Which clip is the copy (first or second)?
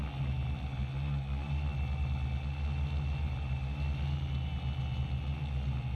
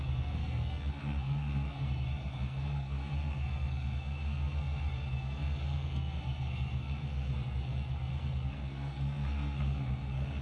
second